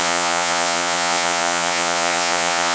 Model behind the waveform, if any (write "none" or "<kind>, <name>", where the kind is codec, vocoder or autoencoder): vocoder, Vocos